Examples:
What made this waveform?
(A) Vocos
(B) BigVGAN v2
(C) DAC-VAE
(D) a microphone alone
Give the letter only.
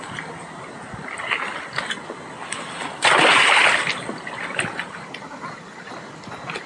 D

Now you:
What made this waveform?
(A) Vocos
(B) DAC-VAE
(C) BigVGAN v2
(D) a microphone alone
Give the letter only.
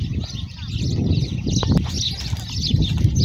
D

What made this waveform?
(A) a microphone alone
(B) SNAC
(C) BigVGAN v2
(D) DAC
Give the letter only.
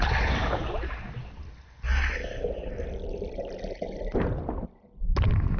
A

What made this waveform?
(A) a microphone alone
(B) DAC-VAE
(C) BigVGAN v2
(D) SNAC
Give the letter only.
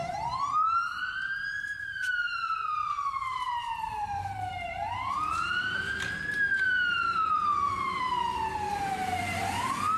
C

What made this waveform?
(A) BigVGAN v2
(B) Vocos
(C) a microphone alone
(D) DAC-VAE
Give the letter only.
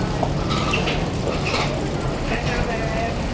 C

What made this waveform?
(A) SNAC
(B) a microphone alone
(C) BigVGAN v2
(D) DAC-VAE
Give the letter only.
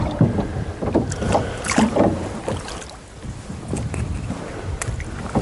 B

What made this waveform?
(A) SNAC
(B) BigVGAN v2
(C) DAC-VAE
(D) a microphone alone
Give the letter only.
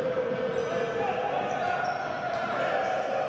D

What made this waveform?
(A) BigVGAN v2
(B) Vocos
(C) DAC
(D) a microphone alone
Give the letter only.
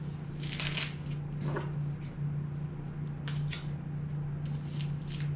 D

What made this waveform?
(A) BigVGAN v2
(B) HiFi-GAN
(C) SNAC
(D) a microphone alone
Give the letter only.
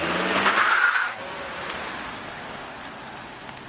D